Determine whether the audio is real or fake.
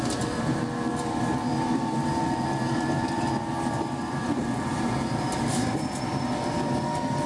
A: fake